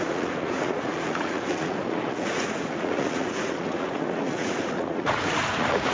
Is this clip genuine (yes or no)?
no